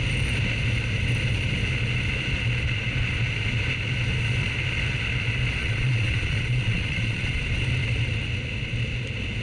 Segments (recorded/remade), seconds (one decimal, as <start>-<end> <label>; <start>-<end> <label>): 0.0-5.6 recorded; 5.6-7.4 remade; 7.4-9.4 recorded